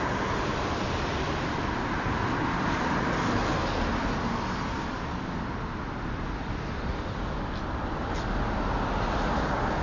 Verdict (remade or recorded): recorded